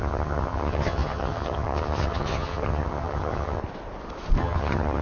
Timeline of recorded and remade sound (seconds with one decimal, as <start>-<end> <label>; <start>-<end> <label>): 0.0-3.6 remade; 3.6-4.4 recorded; 4.4-5.0 remade